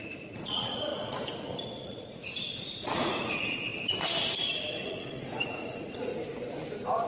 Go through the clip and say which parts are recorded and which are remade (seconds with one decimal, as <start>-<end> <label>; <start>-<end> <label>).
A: 0.0-3.7 remade; 3.7-4.7 recorded; 4.7-6.1 remade; 6.1-7.1 recorded